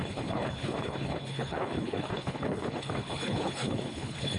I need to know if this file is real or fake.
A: fake